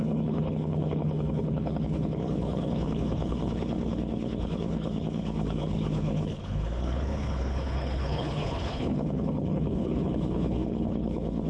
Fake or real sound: fake